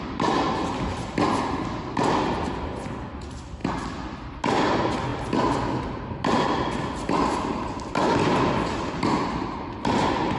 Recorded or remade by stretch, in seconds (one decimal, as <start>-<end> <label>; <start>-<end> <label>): 0.0-10.4 recorded